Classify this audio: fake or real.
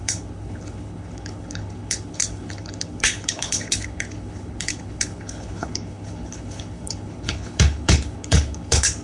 fake